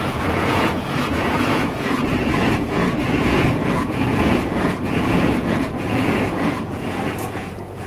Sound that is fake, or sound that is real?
fake